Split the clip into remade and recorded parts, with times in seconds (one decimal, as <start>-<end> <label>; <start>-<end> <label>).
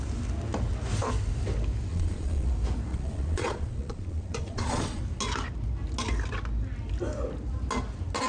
0.0-1.9 recorded; 1.9-2.5 remade; 2.5-2.9 recorded; 2.9-5.0 remade; 5.0-8.3 recorded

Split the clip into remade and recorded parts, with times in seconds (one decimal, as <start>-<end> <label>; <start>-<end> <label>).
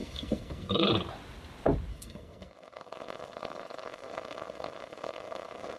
0.0-0.9 remade; 0.9-1.9 recorded; 1.9-5.8 remade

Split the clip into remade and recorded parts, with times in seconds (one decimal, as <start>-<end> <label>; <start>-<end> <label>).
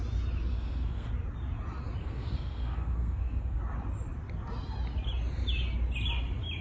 0.0-0.5 recorded; 0.5-1.1 remade; 1.1-2.0 recorded; 2.0-3.6 remade; 3.6-6.6 recorded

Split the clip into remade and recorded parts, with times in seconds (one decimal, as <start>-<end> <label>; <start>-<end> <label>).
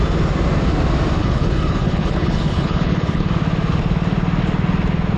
0.0-1.2 recorded; 1.2-3.3 remade; 3.3-5.2 recorded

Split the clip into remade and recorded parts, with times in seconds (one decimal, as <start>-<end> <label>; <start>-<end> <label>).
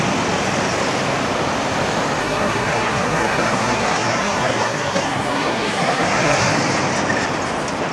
0.0-2.2 recorded; 2.2-6.5 remade; 6.5-7.9 recorded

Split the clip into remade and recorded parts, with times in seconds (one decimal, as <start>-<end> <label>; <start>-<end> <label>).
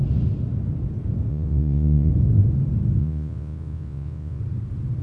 0.0-1.3 recorded; 1.3-2.1 remade; 2.1-3.0 recorded; 3.0-4.4 remade; 4.4-5.0 recorded